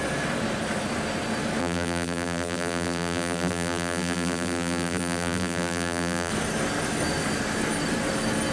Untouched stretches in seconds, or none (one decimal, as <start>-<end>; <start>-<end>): 0.0-1.6; 6.3-8.5